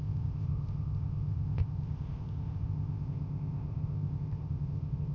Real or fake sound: fake